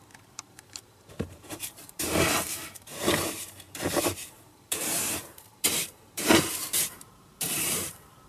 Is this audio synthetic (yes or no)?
yes